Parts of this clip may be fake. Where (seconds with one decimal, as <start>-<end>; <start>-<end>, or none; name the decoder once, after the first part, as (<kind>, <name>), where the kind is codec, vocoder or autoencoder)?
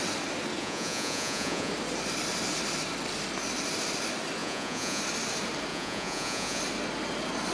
0.6-1.7 (vocoder, Vocos); 4.4-5.0; 5.7-6.6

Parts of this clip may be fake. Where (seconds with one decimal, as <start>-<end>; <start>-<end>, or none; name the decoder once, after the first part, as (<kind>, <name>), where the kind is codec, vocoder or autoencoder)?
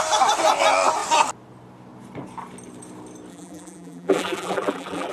3.3-5.1 (vocoder, BigVGAN v2)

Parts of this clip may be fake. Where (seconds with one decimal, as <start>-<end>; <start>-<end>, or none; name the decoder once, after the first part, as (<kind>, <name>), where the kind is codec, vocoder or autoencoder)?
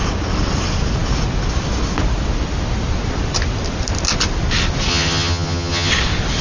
4.9-5.9 (vocoder, HiFi-GAN)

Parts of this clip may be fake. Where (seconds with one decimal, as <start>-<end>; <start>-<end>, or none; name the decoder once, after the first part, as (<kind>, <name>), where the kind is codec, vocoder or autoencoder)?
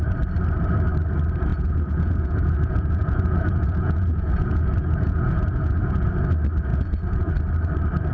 1.5-6.1 (vocoder, Vocos); 6.7-7.3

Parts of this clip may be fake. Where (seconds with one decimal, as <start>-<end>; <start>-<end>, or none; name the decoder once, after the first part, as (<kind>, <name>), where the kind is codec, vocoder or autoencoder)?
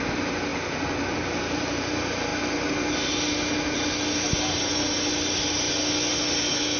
none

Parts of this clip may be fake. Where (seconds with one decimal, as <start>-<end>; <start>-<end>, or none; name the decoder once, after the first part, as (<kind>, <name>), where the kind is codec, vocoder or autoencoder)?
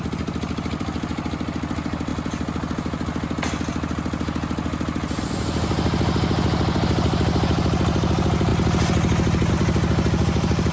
none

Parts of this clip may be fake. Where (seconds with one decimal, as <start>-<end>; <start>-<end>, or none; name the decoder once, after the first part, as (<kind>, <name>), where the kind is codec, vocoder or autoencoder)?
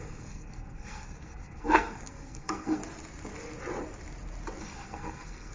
0.0-2.8 (codec, SNAC); 4.6-5.5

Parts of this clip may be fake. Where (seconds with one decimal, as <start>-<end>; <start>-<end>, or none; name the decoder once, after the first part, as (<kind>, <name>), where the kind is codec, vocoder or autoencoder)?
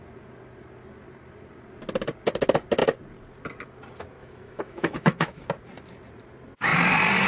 4.2-5.5 (autoencoder, DAC-VAE)